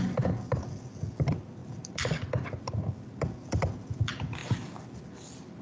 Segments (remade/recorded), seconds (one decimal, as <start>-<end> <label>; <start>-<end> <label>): 0.0-5.6 recorded